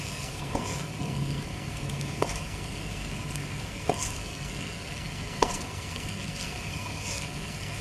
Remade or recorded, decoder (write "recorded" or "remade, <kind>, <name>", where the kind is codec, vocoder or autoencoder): remade, codec, SNAC